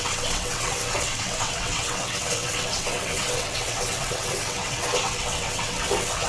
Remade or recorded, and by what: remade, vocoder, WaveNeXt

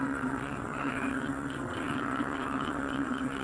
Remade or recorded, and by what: remade, vocoder, WaveNeXt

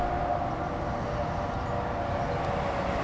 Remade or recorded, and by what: recorded